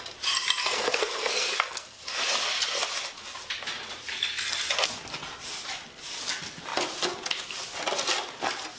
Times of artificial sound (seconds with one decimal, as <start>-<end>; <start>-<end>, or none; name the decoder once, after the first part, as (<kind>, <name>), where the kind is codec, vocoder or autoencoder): 0.6-2.2 (codec, SNAC)

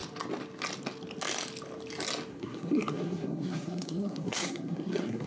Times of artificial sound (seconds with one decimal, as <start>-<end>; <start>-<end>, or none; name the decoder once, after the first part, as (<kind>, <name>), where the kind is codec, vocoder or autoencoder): 2.3-5.3 (codec, SNAC)

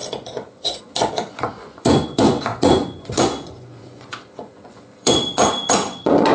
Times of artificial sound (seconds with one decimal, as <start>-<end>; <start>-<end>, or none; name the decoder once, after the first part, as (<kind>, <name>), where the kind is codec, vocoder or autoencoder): 0.0-6.3 (vocoder, Vocos)